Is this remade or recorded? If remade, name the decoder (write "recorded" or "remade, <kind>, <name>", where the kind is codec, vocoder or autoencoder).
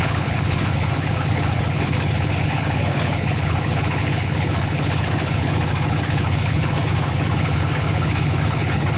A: remade, codec, HILCodec